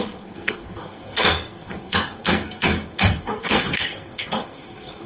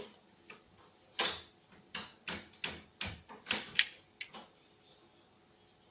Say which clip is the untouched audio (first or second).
second